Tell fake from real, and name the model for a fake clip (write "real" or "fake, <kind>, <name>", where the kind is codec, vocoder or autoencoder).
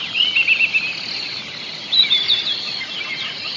real